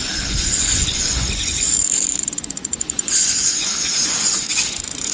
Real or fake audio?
fake